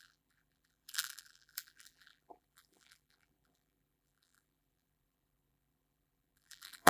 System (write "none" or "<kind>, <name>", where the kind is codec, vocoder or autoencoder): vocoder, BigVGAN v2